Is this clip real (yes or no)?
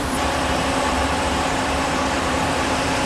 no